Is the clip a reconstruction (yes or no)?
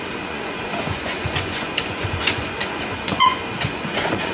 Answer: yes